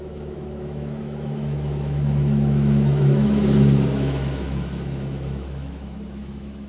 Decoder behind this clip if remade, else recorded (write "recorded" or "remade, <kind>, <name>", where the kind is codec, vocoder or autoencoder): remade, autoencoder, DAC-VAE